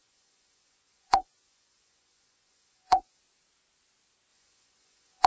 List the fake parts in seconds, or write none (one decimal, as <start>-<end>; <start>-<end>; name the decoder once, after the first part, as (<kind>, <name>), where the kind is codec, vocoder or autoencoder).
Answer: 0.0-3.2 (vocoder, Vocos); 4.3-5.3